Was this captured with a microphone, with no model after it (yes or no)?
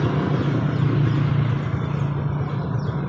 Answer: yes